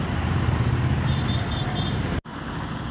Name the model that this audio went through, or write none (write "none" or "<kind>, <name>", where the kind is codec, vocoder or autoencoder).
none